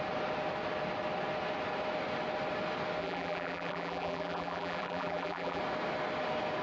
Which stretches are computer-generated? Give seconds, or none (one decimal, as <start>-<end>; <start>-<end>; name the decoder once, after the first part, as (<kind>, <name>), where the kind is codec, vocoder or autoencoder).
3.0-5.6 (vocoder, BigVGAN v2)